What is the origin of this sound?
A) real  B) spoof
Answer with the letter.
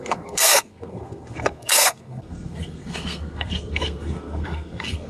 B